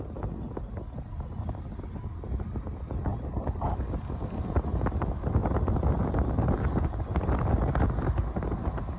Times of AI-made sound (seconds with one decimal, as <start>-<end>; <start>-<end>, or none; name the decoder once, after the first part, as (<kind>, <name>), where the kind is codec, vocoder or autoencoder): none